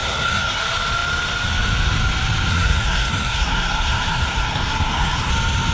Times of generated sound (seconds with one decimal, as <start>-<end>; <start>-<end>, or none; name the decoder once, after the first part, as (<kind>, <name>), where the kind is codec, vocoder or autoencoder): 0.0-0.6 (codec, SNAC); 2.5-5.3